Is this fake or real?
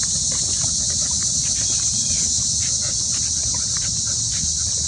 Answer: real